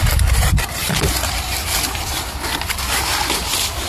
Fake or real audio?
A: real